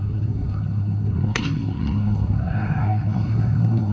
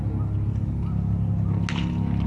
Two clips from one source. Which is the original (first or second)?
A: second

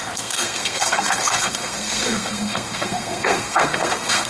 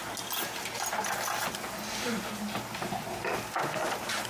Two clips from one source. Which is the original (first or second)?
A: second